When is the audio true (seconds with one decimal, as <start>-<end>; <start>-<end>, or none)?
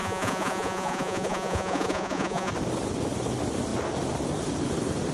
2.5-5.1